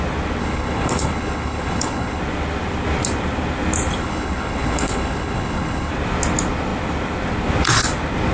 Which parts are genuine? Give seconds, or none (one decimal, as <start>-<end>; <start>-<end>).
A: 0.0-0.4; 2.2-4.0; 5.9-8.3